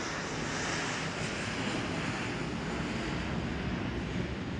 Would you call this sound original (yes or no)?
yes